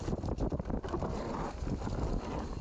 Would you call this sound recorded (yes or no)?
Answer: yes